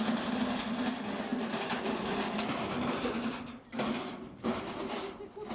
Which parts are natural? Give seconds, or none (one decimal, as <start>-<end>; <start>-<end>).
0.0-1.3; 4.6-5.5